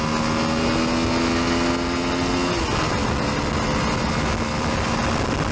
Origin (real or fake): real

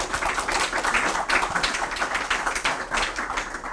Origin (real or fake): real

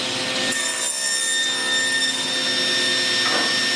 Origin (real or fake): real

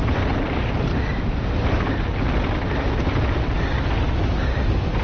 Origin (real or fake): real